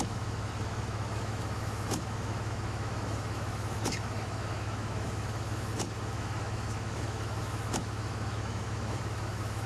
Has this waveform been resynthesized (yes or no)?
yes